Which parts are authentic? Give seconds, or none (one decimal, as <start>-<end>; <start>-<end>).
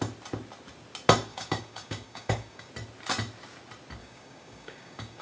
0.0-1.3; 2.7-4.0